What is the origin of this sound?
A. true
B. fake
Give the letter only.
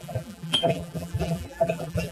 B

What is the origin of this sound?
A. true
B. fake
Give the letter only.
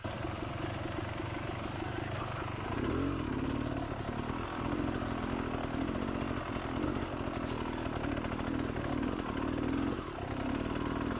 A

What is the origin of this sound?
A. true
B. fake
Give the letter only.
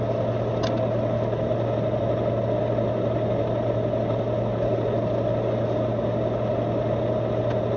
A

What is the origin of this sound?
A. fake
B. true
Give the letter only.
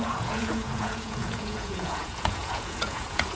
A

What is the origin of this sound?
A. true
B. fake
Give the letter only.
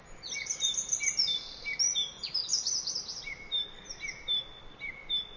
A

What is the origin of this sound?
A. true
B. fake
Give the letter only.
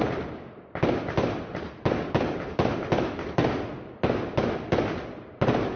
A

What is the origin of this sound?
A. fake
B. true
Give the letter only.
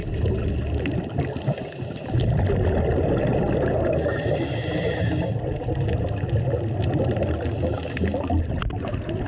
B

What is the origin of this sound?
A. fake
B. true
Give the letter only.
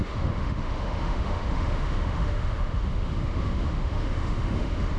A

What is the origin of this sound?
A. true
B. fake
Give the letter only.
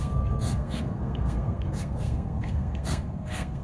B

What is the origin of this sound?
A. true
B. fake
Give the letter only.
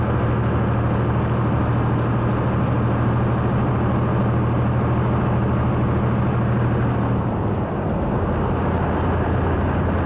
A